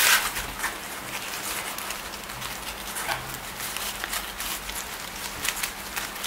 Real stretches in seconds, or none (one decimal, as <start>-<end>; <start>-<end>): 0.0-6.3